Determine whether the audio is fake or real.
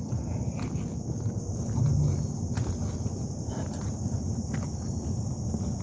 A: real